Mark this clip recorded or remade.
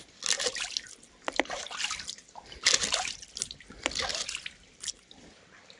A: recorded